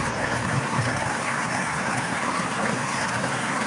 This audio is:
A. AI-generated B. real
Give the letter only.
A